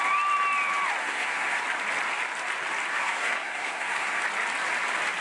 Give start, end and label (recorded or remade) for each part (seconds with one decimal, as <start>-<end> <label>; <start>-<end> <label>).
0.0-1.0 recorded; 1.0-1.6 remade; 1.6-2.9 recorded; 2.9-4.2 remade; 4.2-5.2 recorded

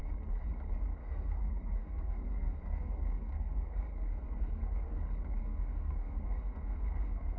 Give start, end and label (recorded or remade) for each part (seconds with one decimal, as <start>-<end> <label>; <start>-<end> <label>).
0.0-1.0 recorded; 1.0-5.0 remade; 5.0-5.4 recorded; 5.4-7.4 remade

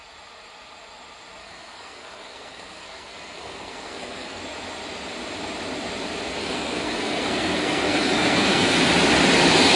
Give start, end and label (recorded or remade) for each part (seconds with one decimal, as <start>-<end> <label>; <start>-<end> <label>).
0.0-1.4 recorded; 1.4-4.4 remade; 4.4-6.4 recorded; 6.4-8.8 remade; 8.8-9.8 recorded